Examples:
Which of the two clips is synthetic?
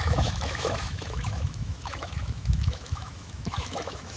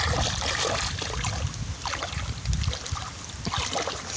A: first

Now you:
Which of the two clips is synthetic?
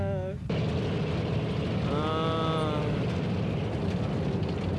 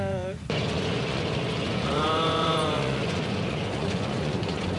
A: second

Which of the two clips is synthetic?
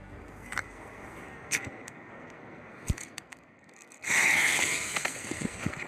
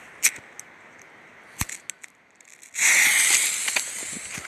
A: first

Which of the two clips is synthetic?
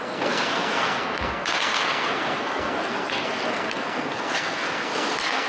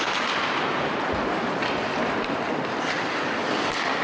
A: first